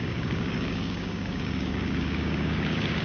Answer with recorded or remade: remade